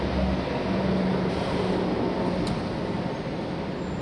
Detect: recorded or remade recorded